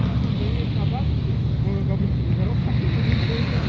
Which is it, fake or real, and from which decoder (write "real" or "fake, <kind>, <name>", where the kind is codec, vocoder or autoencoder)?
real